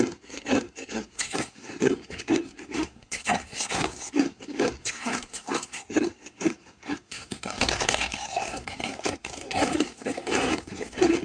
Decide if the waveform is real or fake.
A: fake